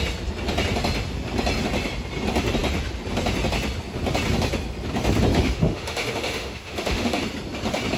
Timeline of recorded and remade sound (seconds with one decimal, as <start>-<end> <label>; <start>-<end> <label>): 0.0-5.3 recorded; 5.3-7.2 remade; 7.2-8.0 recorded